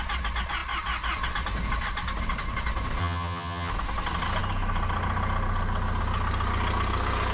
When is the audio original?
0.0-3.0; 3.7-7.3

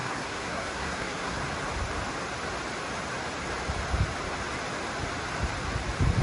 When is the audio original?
1.4-6.2

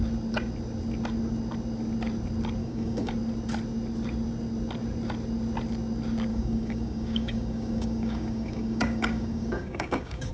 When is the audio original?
0.0-2.6; 3.1-6.3

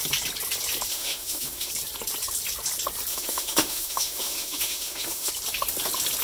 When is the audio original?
0.0-0.9; 1.7-3.1; 5.3-6.2

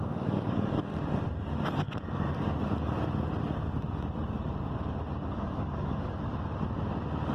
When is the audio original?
0.9-5.3; 6.3-7.3